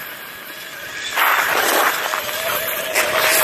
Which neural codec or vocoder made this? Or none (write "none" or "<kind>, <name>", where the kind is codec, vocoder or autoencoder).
none